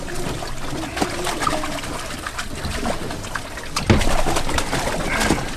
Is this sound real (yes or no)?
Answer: yes